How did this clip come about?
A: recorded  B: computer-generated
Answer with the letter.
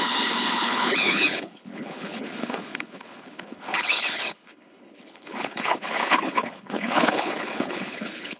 B